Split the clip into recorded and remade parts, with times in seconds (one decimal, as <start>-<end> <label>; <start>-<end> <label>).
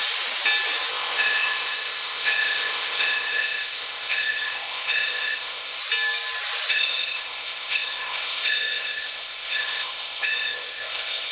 0.0-0.9 recorded; 0.9-5.8 remade; 5.8-6.7 recorded; 6.7-11.3 remade